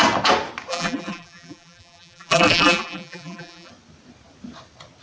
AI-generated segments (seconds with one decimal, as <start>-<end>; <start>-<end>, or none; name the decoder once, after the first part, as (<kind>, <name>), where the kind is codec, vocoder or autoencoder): 0.7-3.7 (vocoder, BigVGAN v2)